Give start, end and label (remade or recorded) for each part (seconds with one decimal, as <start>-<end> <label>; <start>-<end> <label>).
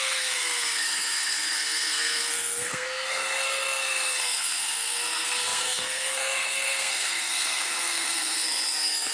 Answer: 0.0-9.1 remade